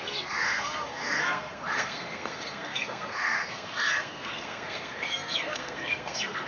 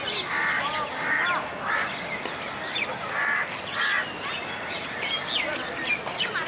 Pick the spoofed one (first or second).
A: first